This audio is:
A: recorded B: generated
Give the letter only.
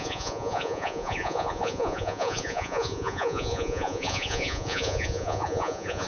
B